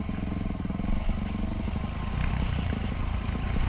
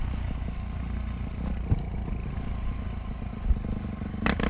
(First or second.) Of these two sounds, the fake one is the first